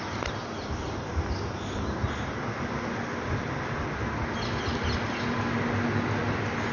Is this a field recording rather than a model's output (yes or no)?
yes